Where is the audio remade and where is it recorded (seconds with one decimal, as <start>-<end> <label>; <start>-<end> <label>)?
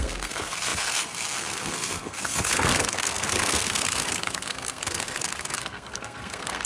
0.0-6.7 remade